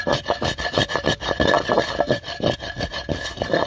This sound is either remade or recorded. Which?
recorded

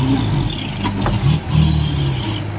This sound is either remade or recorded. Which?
recorded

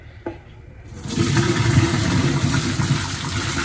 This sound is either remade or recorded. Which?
remade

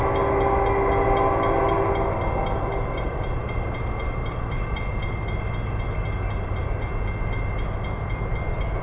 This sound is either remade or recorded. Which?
recorded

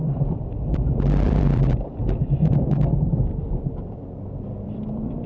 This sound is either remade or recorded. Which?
remade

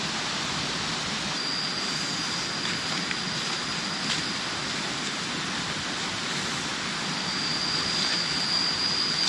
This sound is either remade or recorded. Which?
recorded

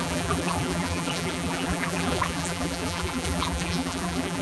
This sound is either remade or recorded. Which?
remade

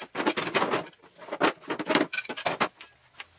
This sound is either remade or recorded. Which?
recorded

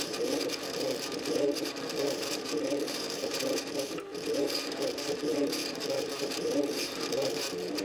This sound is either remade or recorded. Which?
remade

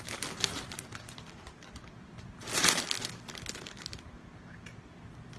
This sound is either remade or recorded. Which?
remade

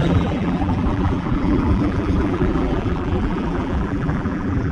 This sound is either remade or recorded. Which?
remade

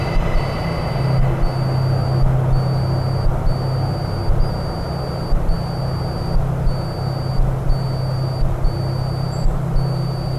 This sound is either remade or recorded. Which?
recorded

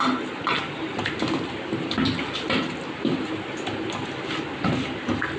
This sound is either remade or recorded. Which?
recorded